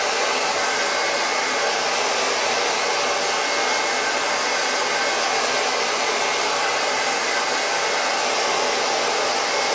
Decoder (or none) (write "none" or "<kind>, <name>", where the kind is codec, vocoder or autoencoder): none